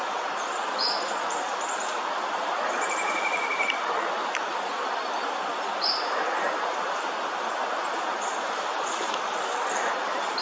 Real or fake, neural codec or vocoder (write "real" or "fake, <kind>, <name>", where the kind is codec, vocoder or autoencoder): real